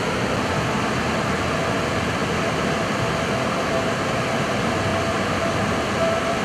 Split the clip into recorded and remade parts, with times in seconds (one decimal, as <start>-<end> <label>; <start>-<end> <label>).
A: 0.0-4.9 recorded; 4.9-6.4 remade